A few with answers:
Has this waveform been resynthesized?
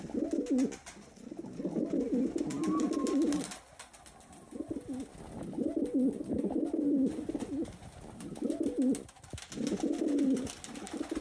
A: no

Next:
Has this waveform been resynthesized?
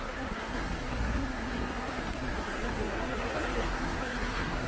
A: yes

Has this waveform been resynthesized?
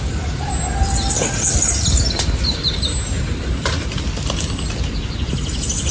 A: no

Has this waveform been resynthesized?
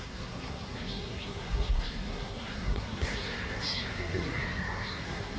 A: yes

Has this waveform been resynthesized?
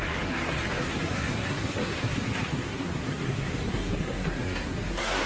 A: yes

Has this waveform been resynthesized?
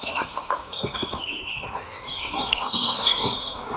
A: yes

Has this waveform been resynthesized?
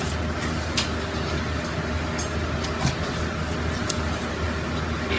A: no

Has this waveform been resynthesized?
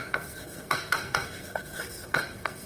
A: yes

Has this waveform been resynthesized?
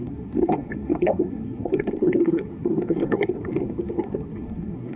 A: yes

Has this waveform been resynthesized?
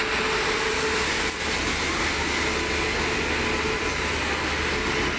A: no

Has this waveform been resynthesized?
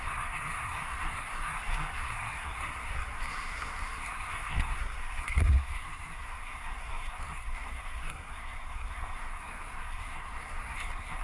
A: yes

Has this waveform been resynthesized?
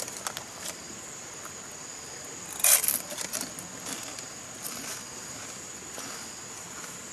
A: no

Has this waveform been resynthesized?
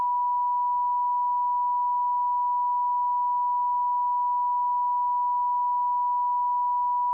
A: no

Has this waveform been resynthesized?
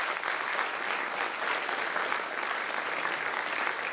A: no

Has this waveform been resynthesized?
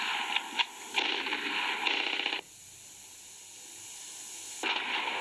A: no